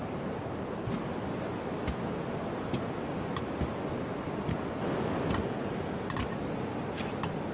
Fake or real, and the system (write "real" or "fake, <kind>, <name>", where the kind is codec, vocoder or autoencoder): real